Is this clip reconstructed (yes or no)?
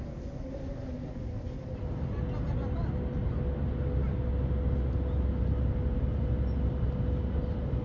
no